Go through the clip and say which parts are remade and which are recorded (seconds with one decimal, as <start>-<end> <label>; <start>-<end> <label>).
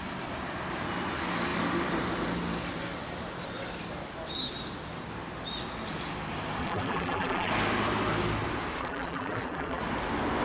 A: 0.0-6.6 recorded; 6.6-7.5 remade; 7.5-8.8 recorded; 8.8-9.8 remade; 9.8-10.4 recorded